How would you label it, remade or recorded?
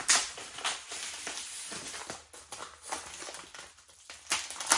recorded